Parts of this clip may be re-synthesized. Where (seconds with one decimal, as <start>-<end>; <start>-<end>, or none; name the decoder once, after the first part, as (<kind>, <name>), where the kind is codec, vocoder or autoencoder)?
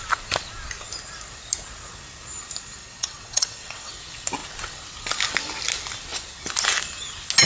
2.8-3.9 (vocoder, WaveNeXt)